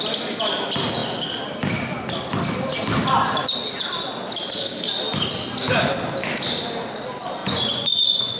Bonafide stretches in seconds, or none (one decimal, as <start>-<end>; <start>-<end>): 0.0-7.4